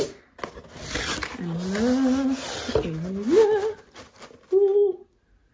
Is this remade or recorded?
recorded